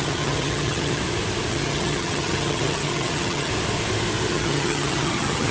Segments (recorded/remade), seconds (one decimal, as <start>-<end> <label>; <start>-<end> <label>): 0.0-1.0 remade; 1.0-1.5 recorded; 1.5-3.5 remade; 3.5-4.3 recorded; 4.3-5.5 remade